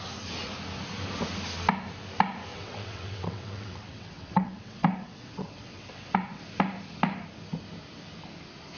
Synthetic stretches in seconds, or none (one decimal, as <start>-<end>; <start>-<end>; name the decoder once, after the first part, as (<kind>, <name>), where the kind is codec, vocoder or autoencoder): 2.5-6.4 (vocoder, WaveNeXt)